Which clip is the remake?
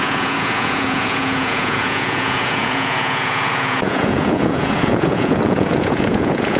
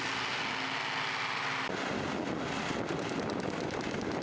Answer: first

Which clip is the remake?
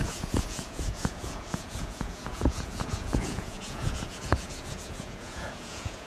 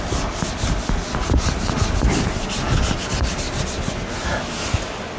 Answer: first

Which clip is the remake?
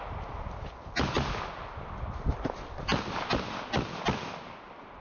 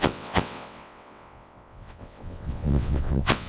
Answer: second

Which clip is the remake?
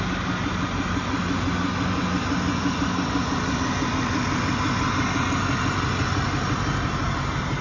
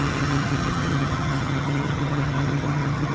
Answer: second